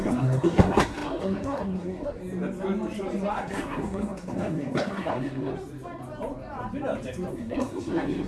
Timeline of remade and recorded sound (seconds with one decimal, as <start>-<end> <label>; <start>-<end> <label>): 0.0-2.2 remade; 2.2-3.3 recorded; 3.3-5.5 remade; 5.5-7.3 recorded; 7.3-8.3 remade